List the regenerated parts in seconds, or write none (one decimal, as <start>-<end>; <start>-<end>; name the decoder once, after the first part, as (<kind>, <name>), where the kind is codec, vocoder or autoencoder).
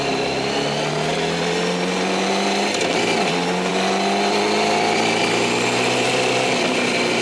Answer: none